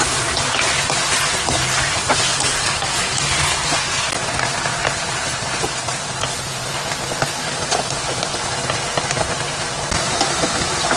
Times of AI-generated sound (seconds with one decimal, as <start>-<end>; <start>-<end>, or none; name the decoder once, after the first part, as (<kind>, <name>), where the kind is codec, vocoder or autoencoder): 2.3-3.2 (codec, DAC); 7.4-8.0